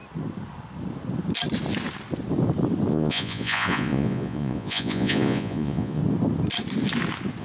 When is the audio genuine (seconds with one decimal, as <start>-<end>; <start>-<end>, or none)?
0.0-2.9; 6.0-7.4